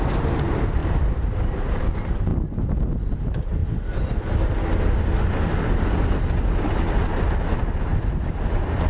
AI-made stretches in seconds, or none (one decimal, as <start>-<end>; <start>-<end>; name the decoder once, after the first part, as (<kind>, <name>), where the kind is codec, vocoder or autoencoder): 2.3-2.8 (vocoder, BigVGAN v2); 3.6-6.7